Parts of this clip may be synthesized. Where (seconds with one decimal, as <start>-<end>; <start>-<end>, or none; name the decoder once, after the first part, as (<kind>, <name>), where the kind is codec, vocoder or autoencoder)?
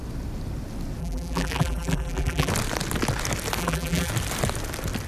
1.0-2.5 (vocoder, BigVGAN v2); 3.6-4.1